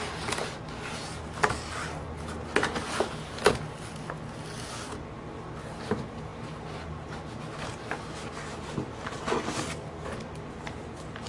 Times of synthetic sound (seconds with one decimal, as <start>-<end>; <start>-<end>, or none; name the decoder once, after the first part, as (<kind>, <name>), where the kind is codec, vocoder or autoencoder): none